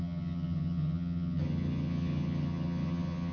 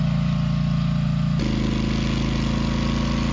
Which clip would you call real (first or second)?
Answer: second